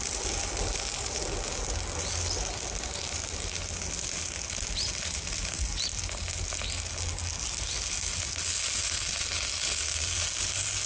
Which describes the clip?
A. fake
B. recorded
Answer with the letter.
B